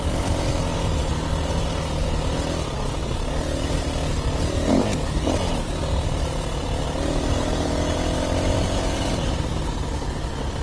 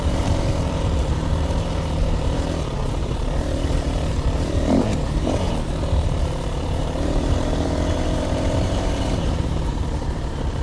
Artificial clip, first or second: second